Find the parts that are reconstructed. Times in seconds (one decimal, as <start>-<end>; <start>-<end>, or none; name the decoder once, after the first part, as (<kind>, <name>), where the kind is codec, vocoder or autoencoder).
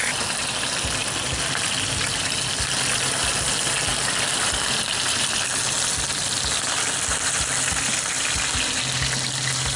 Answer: none